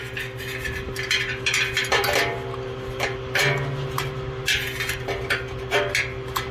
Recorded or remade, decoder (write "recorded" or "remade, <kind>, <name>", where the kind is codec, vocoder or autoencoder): recorded